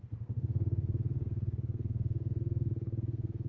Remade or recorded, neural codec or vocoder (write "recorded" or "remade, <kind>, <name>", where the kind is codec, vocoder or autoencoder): remade, codec, SNAC